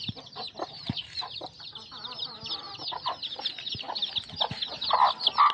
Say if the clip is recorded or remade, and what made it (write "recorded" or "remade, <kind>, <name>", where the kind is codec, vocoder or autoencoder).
recorded